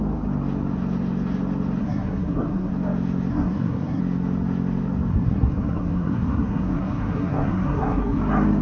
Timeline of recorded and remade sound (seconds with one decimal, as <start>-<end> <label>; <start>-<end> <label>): 0.0-1.8 recorded; 1.8-2.7 remade; 2.7-3.3 recorded; 3.3-4.0 remade; 4.0-5.1 recorded; 5.1-8.2 remade; 8.2-8.6 recorded